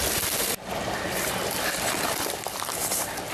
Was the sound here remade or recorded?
recorded